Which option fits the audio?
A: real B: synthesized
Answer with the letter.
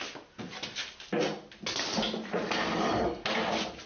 A